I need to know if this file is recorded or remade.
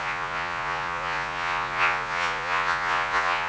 remade